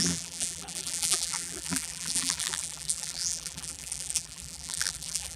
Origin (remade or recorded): remade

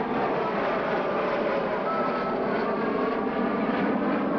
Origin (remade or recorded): recorded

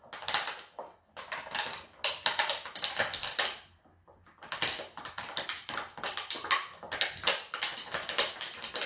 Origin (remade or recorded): recorded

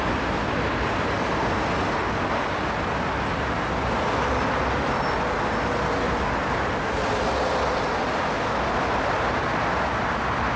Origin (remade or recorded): recorded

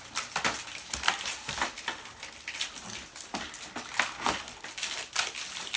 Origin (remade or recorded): recorded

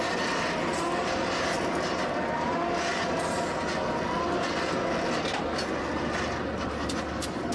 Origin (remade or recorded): recorded